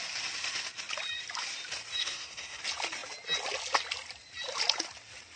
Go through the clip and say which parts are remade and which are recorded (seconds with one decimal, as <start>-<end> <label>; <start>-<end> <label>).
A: 0.0-2.0 recorded; 2.0-2.6 remade; 2.6-5.4 recorded